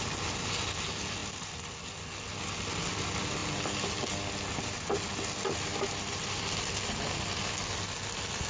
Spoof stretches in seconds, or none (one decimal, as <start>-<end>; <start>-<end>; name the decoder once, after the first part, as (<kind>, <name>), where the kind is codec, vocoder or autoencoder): none